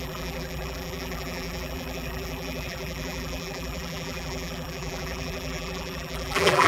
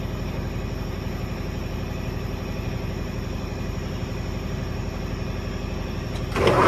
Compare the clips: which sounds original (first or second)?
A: second